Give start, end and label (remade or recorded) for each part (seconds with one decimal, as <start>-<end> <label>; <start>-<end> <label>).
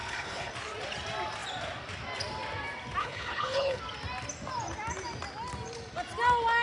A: 0.0-0.5 remade; 0.5-3.0 recorded; 3.0-3.8 remade; 3.8-6.6 recorded